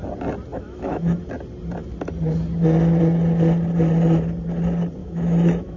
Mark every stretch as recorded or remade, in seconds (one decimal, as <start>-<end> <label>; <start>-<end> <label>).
0.0-0.5 recorded; 0.5-1.3 remade; 1.3-5.0 recorded; 5.0-5.8 remade